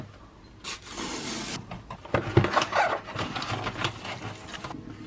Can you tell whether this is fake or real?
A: real